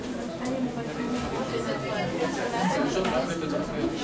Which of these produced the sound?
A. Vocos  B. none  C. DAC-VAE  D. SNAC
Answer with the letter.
B